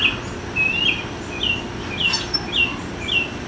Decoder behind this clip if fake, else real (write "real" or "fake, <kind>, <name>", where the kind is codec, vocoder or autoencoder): real